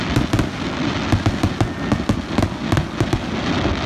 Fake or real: real